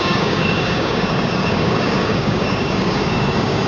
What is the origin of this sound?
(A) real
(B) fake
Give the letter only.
B